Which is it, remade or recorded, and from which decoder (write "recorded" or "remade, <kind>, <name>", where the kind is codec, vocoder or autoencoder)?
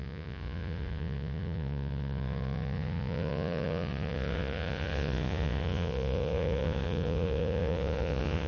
remade, vocoder, Vocos